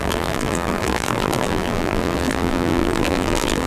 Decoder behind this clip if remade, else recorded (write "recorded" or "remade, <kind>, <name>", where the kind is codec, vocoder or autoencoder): remade, vocoder, BigVGAN v2